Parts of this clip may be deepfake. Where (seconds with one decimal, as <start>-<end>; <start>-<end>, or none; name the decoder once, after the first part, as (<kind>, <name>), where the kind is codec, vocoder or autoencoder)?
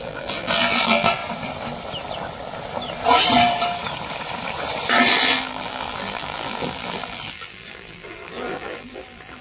0.0-1.2 (vocoder, BigVGAN v2); 5.1-9.4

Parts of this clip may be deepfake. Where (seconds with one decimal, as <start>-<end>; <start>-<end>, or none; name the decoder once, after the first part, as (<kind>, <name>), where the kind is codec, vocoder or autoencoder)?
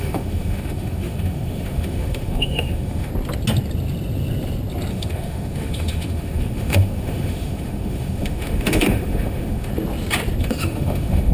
0.0-3.1 (autoencoder, DAC-VAE); 4.9-9.7; 10.4-11.3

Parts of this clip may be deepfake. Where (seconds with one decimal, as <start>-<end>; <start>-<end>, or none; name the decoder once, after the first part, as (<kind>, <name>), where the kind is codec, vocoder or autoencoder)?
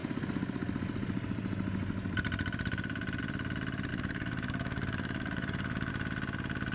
3.9-5.9 (codec, DAC)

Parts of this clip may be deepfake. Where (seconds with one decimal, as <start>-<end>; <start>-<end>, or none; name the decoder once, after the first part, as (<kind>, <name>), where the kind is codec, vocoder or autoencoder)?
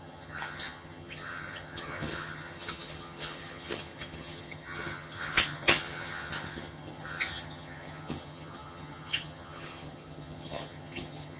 0.0-11.4 (vocoder, HiFi-GAN)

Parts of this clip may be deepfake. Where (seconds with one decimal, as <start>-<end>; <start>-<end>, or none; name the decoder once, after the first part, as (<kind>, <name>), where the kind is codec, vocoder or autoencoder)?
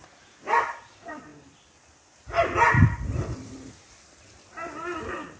none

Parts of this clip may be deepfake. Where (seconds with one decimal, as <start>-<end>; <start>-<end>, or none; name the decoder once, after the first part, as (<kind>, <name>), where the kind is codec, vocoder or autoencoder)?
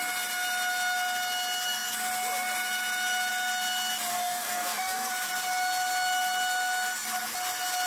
4.1-5.1 (codec, DAC)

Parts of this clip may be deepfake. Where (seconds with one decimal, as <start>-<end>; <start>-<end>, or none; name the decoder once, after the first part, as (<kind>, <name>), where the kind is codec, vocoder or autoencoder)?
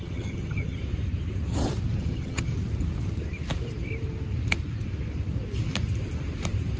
0.0-0.8 (vocoder, HiFi-GAN); 2.0-2.5